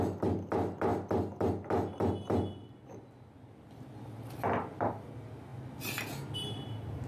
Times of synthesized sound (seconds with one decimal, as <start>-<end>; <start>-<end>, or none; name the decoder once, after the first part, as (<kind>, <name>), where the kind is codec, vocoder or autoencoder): none